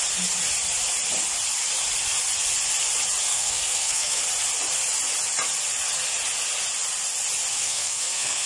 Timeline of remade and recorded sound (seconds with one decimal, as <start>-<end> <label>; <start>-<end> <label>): 0.0-3.3 recorded; 3.3-4.2 remade; 4.2-7.5 recorded; 7.5-8.5 remade